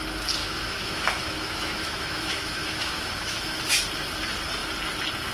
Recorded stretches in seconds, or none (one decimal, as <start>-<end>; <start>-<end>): 0.0-0.4; 3.6-5.3